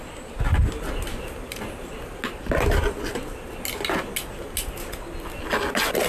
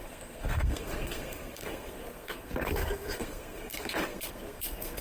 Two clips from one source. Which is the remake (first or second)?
second